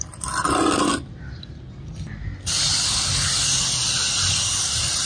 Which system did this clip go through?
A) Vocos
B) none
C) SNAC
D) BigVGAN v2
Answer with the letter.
B